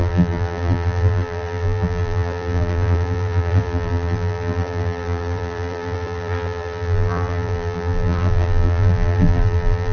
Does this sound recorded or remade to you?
remade